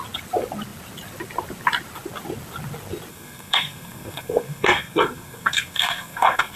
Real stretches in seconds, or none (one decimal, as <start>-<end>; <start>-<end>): 0.0-3.1